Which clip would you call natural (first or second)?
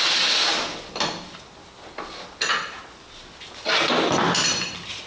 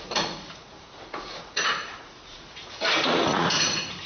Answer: first